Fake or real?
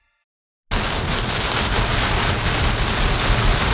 real